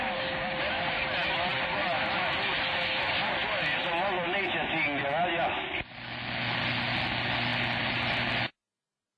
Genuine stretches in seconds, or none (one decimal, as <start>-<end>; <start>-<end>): 0.0-9.2